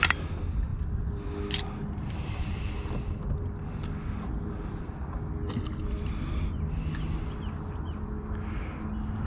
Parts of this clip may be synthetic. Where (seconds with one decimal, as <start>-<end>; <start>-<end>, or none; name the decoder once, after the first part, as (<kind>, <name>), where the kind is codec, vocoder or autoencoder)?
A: none